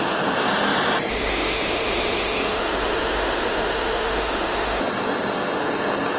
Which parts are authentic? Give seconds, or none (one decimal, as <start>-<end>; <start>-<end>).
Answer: 0.0-1.1; 4.8-6.2